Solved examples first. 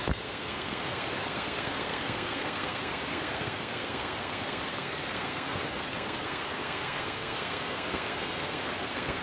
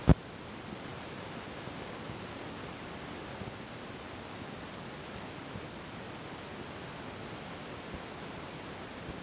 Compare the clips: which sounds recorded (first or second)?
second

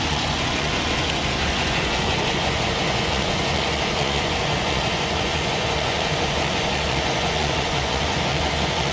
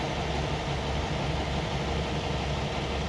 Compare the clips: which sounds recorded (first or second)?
second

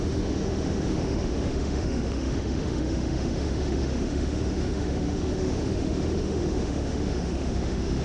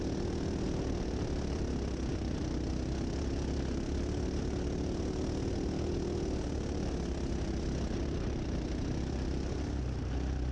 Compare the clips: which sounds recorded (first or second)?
second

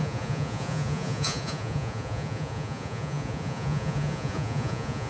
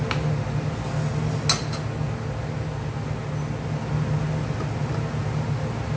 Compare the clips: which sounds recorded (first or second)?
second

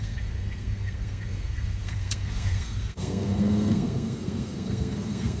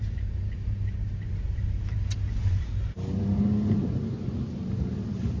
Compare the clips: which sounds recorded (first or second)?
second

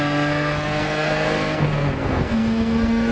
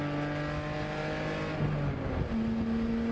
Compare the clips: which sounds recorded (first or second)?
second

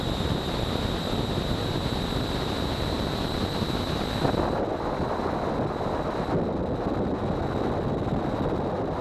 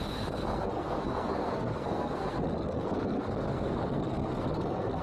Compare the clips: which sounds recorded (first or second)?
first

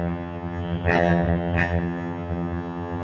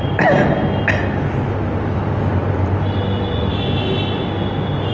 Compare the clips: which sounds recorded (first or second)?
second